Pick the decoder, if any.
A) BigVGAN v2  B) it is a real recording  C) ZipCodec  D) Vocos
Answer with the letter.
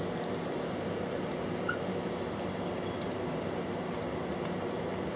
B